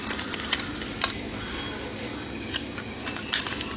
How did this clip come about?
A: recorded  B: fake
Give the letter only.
A